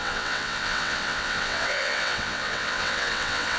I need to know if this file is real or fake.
fake